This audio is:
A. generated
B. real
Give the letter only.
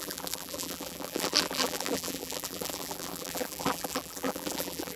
A